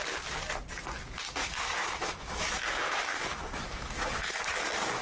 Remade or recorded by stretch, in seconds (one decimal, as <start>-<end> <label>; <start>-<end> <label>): 0.0-1.4 recorded; 1.4-4.4 remade; 4.4-5.0 recorded